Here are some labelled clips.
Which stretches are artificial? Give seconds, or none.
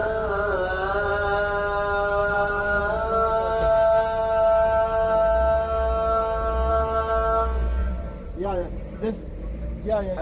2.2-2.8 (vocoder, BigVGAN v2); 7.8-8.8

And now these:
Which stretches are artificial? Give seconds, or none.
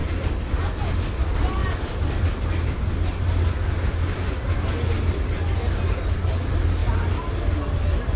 0.0-0.6 (vocoder, BigVGAN v2); 1.6-2.8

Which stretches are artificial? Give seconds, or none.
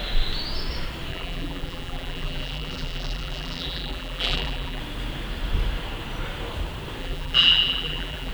1.1-4.8 (vocoder, BigVGAN v2); 7.0-8.3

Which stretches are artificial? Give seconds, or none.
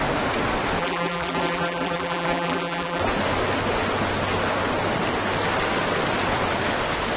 0.8-3.0 (vocoder, BigVGAN v2)